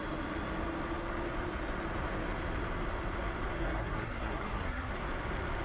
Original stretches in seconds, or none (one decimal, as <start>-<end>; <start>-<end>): 0.0-3.6; 4.9-5.6